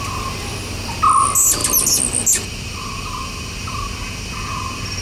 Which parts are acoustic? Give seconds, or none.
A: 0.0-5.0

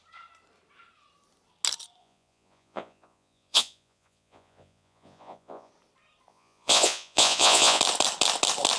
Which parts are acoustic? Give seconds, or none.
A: 0.0-2.0; 5.7-6.3; 7.8-8.8

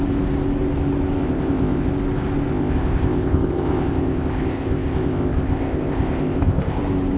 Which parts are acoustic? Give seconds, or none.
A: 0.0-1.2; 1.9-2.5; 6.8-7.2

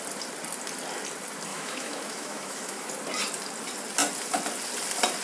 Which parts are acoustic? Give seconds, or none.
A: 0.0-1.5; 2.9-5.2